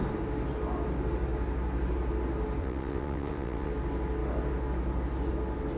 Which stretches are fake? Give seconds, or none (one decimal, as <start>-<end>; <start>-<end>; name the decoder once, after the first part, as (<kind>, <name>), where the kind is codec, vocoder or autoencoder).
2.6-3.7 (vocoder, WaveNeXt)

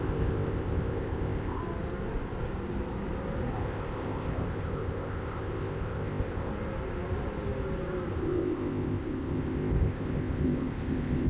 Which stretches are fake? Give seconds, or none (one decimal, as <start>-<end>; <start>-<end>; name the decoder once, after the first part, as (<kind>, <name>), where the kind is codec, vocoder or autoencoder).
0.0-1.6 (codec, ZipCodec); 3.5-6.5; 8.1-11.3

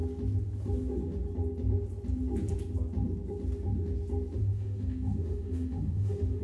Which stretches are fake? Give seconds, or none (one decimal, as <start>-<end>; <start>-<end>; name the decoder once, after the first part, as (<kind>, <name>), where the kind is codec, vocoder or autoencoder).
4.4-6.4 (autoencoder, DAC-VAE)

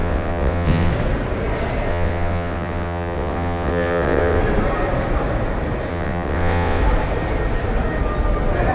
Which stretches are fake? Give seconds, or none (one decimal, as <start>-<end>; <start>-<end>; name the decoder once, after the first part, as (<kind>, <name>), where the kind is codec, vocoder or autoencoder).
0.0-0.9 (vocoder, WaveNeXt); 1.9-4.4; 5.9-6.8